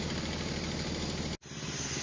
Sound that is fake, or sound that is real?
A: real